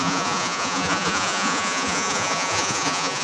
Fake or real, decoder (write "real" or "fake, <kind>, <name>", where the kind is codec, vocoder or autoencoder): fake, vocoder, Vocos